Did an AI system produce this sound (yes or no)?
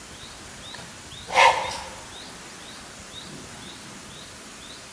no